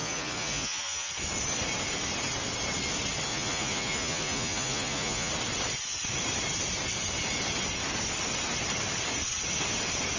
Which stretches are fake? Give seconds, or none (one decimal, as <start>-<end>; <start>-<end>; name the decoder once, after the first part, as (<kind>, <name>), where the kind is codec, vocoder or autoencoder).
0.0-1.1 (vocoder, Vocos); 3.3-5.3